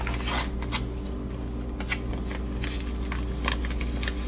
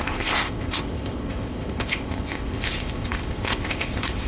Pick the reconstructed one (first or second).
second